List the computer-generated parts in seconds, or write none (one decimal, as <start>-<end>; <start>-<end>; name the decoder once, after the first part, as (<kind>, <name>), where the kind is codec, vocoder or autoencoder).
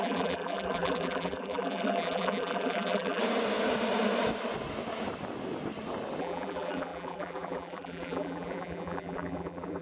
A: 0.0-3.2 (vocoder, BigVGAN v2); 6.2-9.8